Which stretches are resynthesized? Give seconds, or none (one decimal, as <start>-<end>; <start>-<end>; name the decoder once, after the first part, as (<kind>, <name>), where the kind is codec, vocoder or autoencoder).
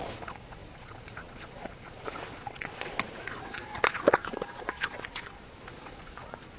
0.0-6.6 (vocoder, Vocos)